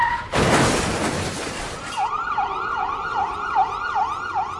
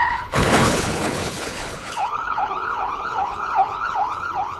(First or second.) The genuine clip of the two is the first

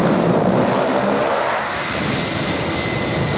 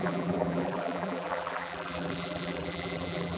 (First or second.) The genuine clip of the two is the first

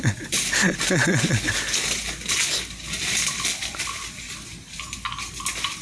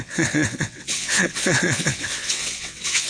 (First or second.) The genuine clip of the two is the first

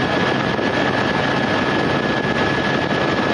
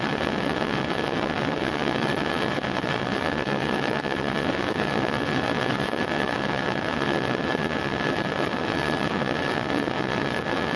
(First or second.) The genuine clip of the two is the first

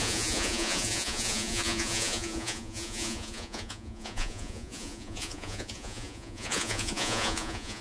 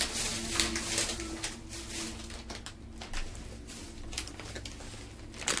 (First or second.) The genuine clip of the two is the second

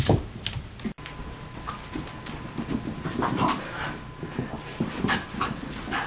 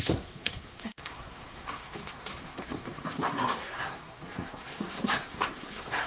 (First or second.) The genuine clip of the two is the first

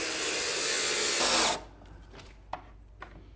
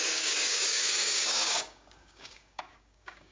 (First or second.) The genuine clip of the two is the first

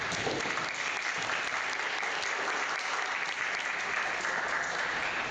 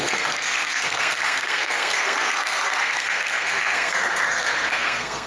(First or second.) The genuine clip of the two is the first